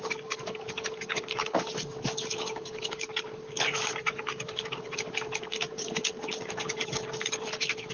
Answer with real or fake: fake